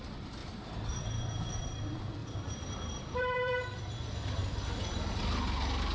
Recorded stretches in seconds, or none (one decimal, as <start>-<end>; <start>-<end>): 0.0-0.4; 1.5-2.2; 3.6-5.9